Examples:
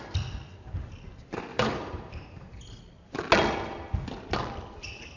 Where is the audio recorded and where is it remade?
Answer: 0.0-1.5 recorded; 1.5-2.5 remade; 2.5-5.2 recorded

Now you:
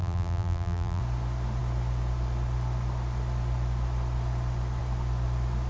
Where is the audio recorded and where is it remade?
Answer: 0.0-1.0 remade; 1.0-5.7 recorded

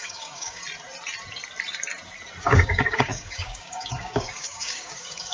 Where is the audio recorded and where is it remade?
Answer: 0.0-0.6 remade; 0.6-2.4 recorded; 2.4-5.3 remade

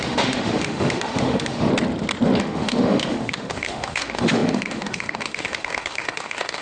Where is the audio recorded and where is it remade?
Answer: 0.0-1.7 remade; 1.7-2.4 recorded; 2.4-6.6 remade

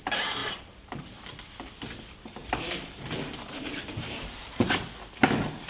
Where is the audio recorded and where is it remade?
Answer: 0.0-0.4 recorded; 0.4-1.8 remade; 1.8-2.4 recorded; 2.4-4.7 remade; 4.7-5.7 recorded

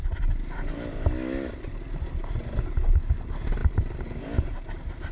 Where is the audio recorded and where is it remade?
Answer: 0.0-5.1 recorded

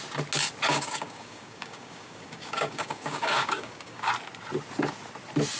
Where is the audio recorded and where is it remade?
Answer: 0.0-0.7 recorded; 0.7-4.1 remade; 4.1-5.6 recorded